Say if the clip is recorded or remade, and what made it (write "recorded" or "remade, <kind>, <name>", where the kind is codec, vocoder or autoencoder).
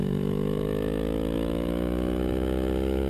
remade, autoencoder, DAC-VAE